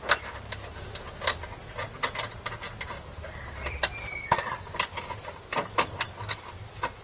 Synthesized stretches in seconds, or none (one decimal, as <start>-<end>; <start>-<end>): none